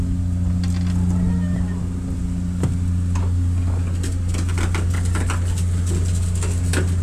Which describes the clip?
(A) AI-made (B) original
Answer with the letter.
B